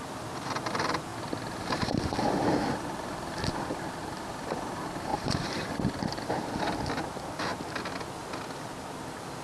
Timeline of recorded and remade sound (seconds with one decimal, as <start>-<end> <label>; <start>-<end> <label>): 0.0-5.1 recorded; 5.1-5.7 remade; 5.7-9.4 recorded